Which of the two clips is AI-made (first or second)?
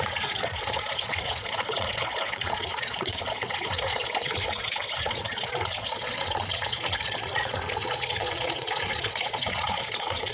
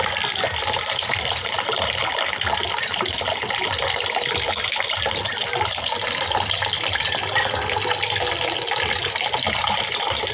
first